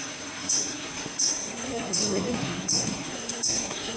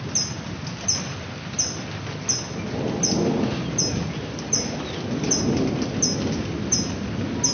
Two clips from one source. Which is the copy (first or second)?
first